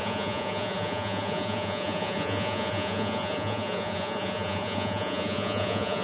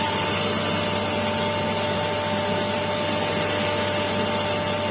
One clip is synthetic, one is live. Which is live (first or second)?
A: second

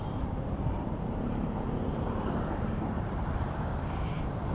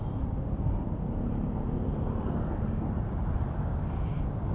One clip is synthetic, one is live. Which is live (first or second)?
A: second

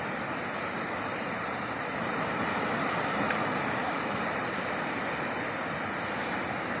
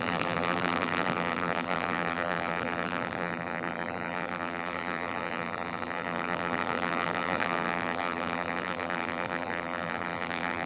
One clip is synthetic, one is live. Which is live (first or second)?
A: first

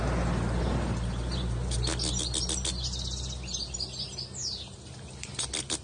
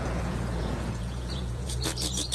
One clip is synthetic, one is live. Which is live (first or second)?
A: first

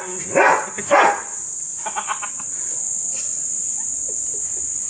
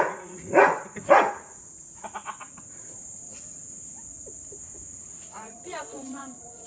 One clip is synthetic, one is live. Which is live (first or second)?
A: first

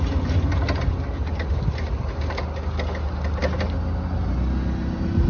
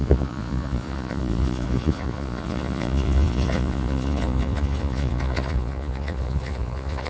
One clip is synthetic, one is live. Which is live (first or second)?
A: first